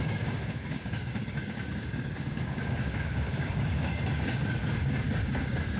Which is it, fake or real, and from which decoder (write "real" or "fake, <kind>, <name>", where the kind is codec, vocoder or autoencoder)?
fake, codec, DAC